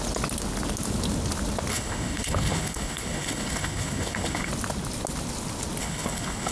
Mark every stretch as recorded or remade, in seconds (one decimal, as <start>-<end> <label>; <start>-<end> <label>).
0.0-1.7 recorded; 1.7-4.5 remade; 4.5-5.8 recorded; 5.8-6.5 remade